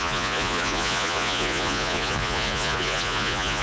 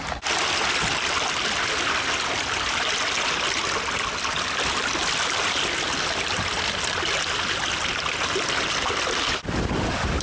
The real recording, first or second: second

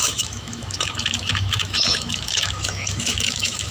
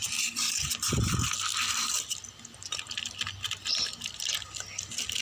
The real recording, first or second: second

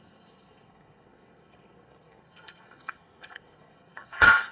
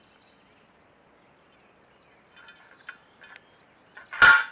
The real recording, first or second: second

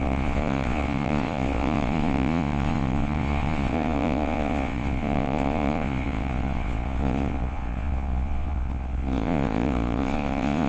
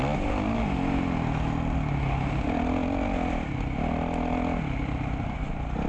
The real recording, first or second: second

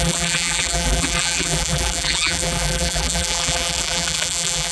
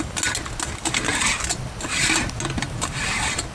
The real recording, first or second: second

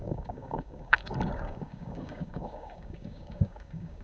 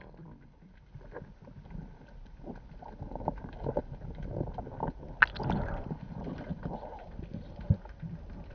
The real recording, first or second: second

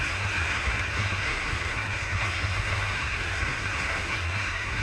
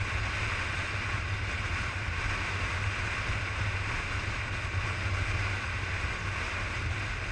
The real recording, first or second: second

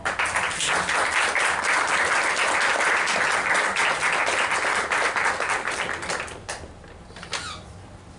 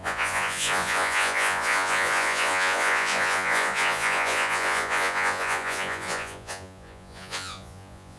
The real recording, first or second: first